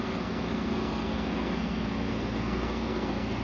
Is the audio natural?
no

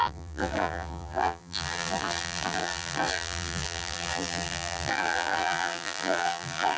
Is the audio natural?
no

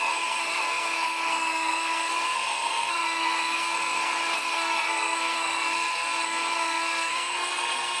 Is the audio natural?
no